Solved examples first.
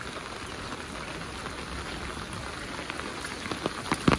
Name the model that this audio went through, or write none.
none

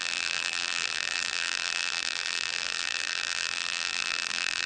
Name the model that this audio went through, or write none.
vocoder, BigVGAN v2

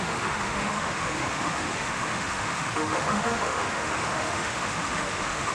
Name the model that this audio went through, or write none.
autoencoder, DAC-VAE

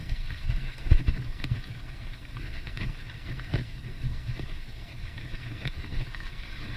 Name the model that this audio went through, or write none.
codec, SNAC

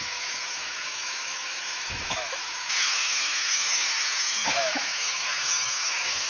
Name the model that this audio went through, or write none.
autoencoder, DAC-VAE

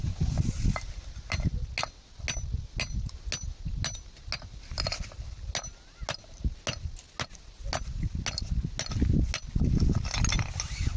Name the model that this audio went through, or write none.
none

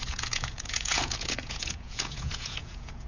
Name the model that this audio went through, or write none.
vocoder, Vocos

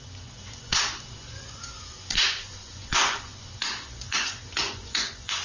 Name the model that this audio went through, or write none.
vocoder, Vocos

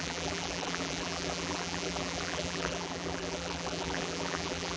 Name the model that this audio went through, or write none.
vocoder, BigVGAN v2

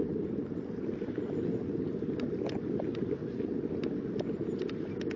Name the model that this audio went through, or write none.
none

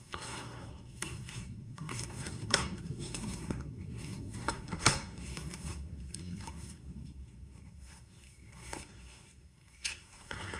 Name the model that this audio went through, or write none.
codec, SNAC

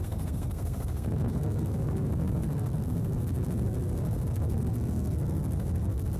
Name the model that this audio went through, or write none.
codec, SNAC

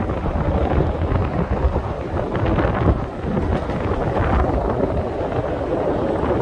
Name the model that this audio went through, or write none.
none